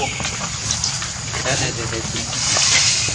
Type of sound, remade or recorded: recorded